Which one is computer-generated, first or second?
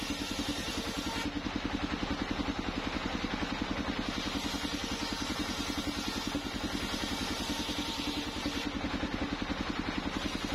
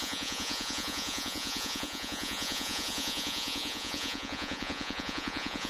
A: second